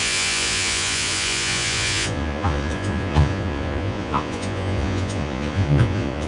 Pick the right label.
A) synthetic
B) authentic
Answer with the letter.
A